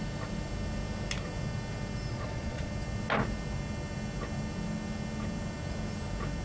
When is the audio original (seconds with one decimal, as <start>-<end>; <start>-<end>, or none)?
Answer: 0.0-2.1; 2.7-6.4